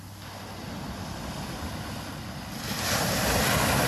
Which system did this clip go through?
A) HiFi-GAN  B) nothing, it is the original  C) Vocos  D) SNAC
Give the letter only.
B